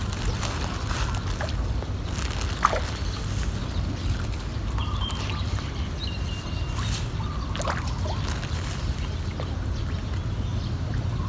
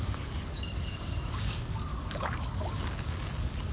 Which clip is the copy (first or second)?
second